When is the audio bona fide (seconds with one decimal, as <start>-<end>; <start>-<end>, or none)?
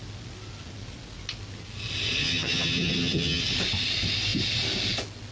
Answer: 0.0-2.2; 3.4-5.3